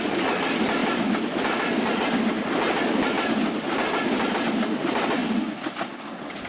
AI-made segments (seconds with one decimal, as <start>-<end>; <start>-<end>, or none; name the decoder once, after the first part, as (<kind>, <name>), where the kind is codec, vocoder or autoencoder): none